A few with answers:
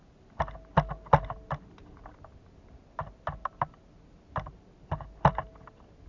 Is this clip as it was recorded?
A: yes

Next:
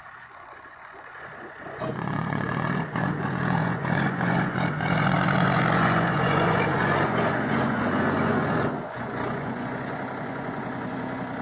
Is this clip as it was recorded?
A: no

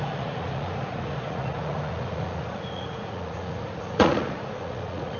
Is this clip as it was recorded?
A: no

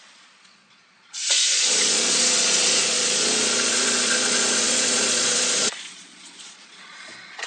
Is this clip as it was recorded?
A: no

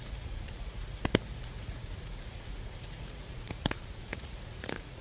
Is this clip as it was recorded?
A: no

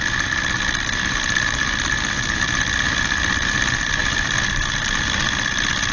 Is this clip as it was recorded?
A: yes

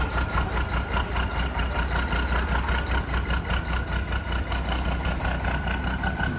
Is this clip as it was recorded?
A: yes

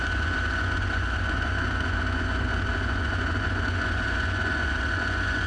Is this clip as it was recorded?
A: no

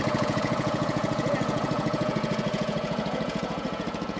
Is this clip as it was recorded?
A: no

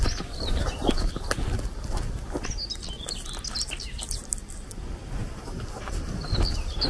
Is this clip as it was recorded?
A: yes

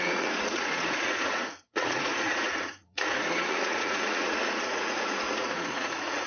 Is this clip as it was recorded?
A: no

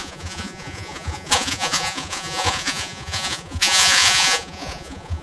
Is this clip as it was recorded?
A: no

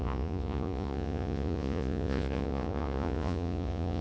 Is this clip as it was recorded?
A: no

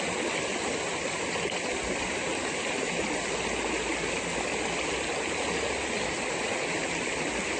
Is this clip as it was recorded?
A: yes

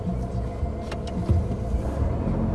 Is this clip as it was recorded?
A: yes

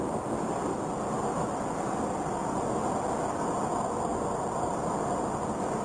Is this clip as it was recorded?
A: yes